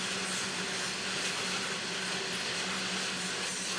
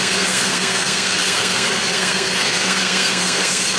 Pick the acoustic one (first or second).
first